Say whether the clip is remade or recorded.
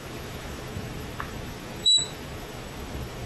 remade